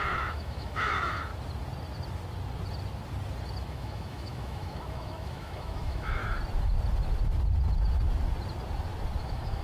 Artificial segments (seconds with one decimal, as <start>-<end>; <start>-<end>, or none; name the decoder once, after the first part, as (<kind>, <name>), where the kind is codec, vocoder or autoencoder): 0.0-1.3 (autoencoder, DAC-VAE); 3.7-6.2; 9.2-9.6